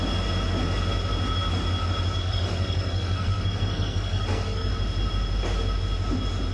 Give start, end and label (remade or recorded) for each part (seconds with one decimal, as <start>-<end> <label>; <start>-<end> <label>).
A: 0.0-2.2 recorded; 2.2-4.7 remade; 4.7-6.5 recorded